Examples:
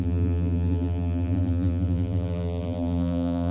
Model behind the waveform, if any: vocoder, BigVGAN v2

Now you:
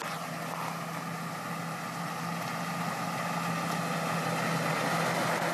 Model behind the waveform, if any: none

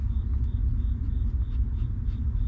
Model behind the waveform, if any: none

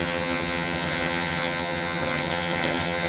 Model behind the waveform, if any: vocoder, HiFi-GAN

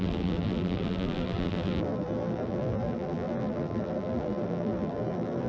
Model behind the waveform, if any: vocoder, BigVGAN v2